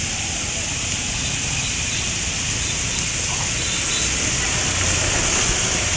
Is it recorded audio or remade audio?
recorded